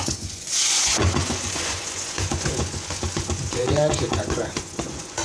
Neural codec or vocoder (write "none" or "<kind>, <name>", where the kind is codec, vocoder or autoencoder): vocoder, Vocos